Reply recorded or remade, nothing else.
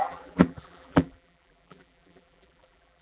remade